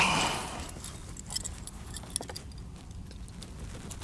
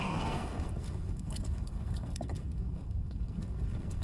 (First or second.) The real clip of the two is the first